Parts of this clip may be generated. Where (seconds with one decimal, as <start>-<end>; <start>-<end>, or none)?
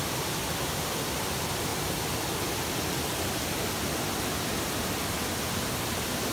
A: none